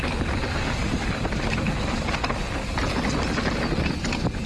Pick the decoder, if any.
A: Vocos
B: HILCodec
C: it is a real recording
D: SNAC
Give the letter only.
C